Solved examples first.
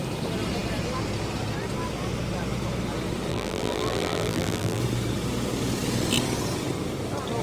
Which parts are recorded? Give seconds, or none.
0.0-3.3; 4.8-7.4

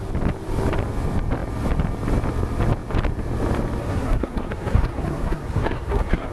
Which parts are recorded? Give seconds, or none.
0.0-3.8